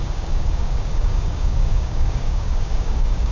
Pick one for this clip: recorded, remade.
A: remade